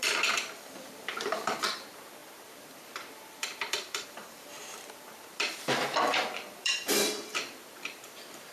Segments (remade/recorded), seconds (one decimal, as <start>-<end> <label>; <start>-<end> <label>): 0.0-8.5 remade